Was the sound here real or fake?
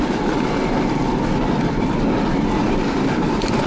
real